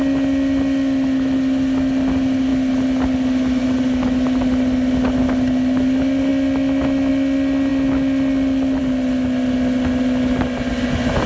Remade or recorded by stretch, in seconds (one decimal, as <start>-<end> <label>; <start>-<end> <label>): 0.0-11.3 recorded

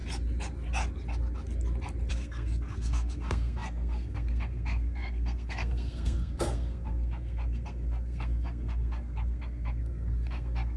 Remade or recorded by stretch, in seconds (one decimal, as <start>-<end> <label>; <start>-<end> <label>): 0.0-2.1 recorded; 2.1-10.8 remade

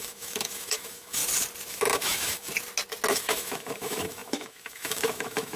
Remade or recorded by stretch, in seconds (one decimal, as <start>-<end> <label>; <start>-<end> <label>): 0.0-1.2 remade; 1.2-1.7 recorded; 1.7-2.5 remade; 2.5-3.1 recorded; 3.1-5.6 remade

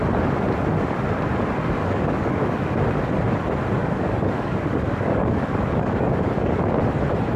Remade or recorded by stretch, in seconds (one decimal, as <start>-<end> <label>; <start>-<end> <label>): 0.0-1.8 recorded; 1.8-2.8 remade; 2.8-3.8 recorded; 3.8-6.6 remade; 6.6-7.4 recorded

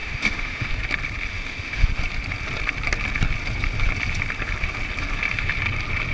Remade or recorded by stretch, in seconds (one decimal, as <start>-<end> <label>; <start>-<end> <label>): 0.0-0.7 remade; 0.7-1.3 recorded; 1.3-1.9 remade; 1.9-6.1 recorded

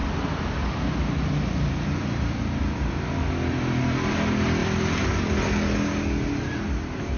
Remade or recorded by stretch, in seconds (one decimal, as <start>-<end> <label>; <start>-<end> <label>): 0.0-3.8 remade; 3.8-4.6 recorded; 4.6-5.2 remade; 5.2-7.2 recorded

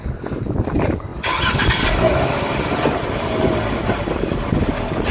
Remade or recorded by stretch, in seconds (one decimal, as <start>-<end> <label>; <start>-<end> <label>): 0.0-1.1 recorded; 1.1-4.0 remade; 4.0-5.1 recorded